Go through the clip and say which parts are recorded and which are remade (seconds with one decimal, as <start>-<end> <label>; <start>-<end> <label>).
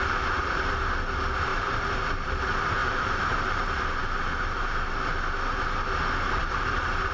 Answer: 0.0-1.5 recorded; 1.5-2.3 remade; 2.3-2.8 recorded; 2.8-4.9 remade; 4.9-6.4 recorded; 6.4-7.1 remade